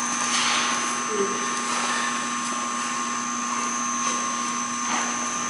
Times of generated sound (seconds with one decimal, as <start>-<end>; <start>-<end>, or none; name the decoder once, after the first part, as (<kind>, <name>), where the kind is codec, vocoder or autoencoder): none